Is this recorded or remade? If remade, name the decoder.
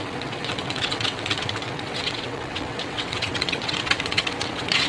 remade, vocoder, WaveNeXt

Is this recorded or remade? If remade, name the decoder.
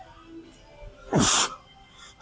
recorded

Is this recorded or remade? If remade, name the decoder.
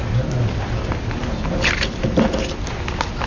recorded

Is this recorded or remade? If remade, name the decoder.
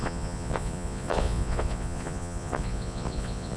remade, vocoder, Vocos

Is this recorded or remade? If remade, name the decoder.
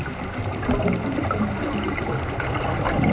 recorded